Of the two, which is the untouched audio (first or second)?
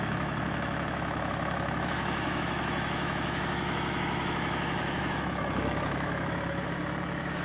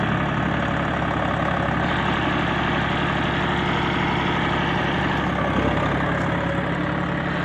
second